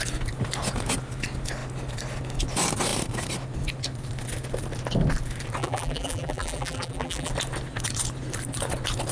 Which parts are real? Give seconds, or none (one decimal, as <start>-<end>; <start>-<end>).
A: 0.0-5.6; 7.3-9.1